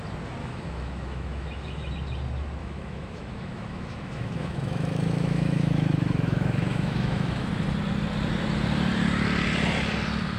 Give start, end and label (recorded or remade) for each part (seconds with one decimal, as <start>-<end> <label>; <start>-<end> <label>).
0.0-0.4 recorded; 0.4-1.9 remade; 1.9-2.6 recorded; 2.6-7.5 remade; 7.5-10.4 recorded